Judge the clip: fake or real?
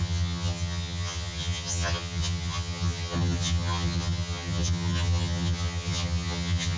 fake